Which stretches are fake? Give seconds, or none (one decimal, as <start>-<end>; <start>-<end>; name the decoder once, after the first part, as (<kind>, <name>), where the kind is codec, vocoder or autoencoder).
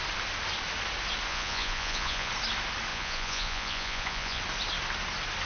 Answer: 1.3-2.3 (vocoder, Vocos); 2.9-4.4